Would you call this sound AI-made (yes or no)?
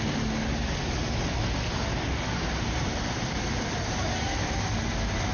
no